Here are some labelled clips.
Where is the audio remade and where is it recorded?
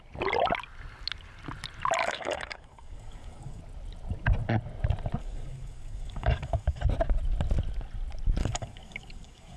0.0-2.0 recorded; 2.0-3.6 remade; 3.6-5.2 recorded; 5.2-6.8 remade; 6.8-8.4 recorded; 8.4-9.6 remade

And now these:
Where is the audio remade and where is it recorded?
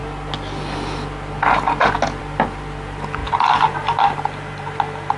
0.0-3.2 recorded; 3.2-4.7 remade; 4.7-5.2 recorded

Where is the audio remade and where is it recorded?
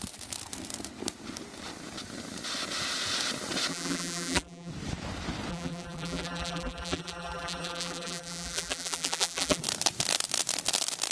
0.0-3.7 recorded; 3.7-4.7 remade; 4.7-5.5 recorded; 5.5-9.6 remade; 9.6-11.1 recorded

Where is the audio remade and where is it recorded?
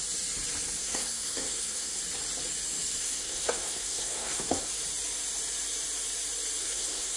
0.0-0.8 recorded; 0.8-2.0 remade; 2.0-3.0 recorded; 3.0-4.7 remade; 4.7-6.6 recorded; 6.6-7.2 remade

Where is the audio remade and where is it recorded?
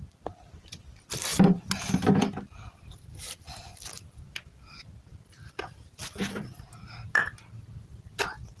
0.0-1.3 recorded; 1.3-2.2 remade; 2.2-8.6 recorded